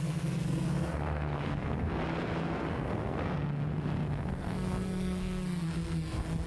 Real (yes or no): no